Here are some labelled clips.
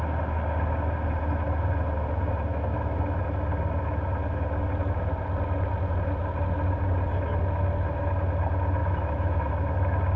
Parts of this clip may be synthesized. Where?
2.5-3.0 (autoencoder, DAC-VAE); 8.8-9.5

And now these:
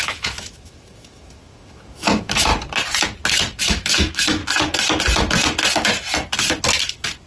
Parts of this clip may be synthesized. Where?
0.0-2.5 (autoencoder, DAC-VAE); 3.6-4.4

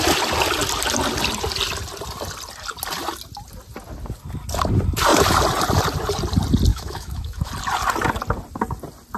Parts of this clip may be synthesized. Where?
6.7-7.5 (autoencoder, DAC-VAE)

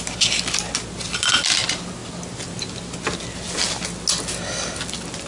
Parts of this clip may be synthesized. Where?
none

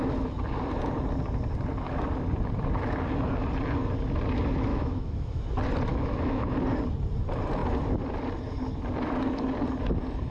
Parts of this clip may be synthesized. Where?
4.7-5.4 (autoencoder, DAC-VAE); 5.9-6.5

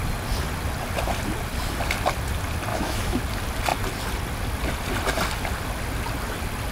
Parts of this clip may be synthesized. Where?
2.7-3.2 (autoencoder, DAC-VAE)